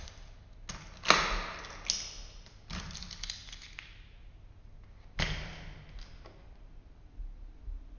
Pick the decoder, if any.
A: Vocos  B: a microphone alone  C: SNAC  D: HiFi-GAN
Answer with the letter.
B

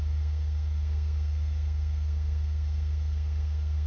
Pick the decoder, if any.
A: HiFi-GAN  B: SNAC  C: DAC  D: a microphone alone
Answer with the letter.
B